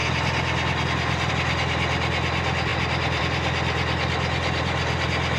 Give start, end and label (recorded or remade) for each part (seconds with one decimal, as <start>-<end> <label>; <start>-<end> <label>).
0.0-5.4 recorded